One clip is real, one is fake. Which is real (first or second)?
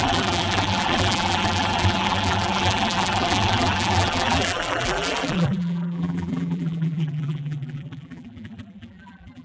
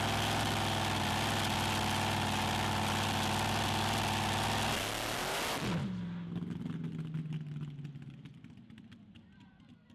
second